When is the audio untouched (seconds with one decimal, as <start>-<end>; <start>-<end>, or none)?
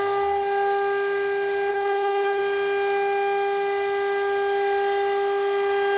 0.0-1.7; 2.4-6.0